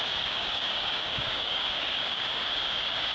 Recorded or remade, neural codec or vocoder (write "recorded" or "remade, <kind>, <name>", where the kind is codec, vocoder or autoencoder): remade, codec, DAC